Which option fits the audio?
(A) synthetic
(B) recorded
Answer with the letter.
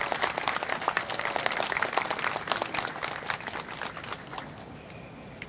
B